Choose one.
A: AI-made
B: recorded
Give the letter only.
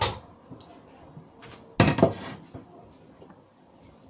B